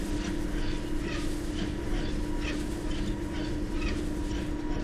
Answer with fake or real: real